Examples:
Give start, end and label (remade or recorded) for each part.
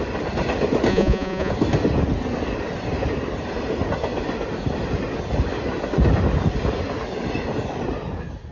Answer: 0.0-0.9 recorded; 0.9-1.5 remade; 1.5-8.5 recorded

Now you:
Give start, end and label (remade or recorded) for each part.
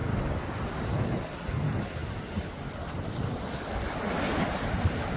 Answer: 0.0-5.2 recorded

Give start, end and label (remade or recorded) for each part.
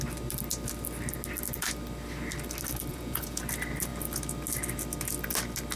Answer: 0.0-2.9 recorded; 2.9-3.4 remade; 3.4-5.8 recorded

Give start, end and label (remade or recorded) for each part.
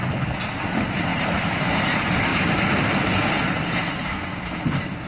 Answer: 0.0-5.1 recorded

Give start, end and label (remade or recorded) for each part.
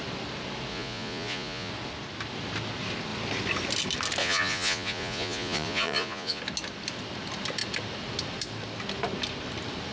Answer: 0.0-0.7 recorded; 0.7-1.7 remade; 1.7-4.2 recorded; 4.2-6.4 remade; 6.4-9.9 recorded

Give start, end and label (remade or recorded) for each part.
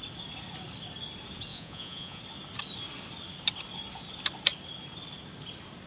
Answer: 0.0-1.5 recorded; 1.5-2.2 remade; 2.2-5.9 recorded